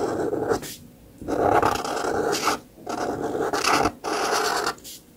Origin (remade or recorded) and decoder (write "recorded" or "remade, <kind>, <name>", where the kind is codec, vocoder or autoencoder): recorded